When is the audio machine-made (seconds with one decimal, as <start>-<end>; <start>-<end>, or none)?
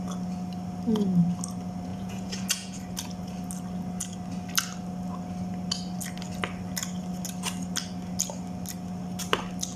1.9-2.8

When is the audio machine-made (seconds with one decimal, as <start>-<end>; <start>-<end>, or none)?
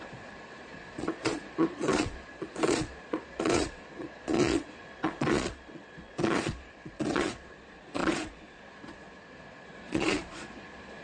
0.0-11.0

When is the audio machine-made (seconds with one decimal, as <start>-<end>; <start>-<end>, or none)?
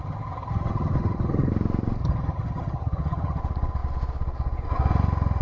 0.0-1.5; 2.0-3.4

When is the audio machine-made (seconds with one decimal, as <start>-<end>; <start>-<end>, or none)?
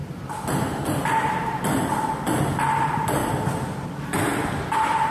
0.8-3.2; 4.0-5.1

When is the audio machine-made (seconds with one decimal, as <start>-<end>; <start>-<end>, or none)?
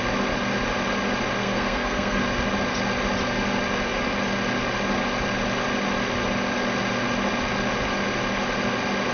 1.4-2.2